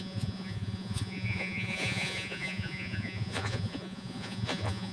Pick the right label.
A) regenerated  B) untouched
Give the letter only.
A